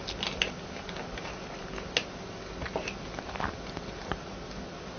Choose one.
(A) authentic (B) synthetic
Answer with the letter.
A